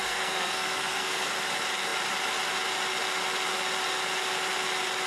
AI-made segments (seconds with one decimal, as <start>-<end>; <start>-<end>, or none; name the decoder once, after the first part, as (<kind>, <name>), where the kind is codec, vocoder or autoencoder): 0.0-1.3 (codec, SNAC)